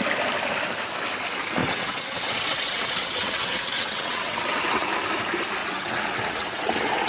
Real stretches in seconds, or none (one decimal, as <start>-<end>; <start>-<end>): 0.0-1.6; 4.9-5.6